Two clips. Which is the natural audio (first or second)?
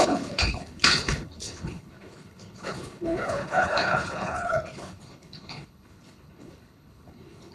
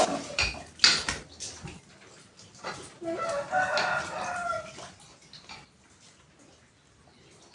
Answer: second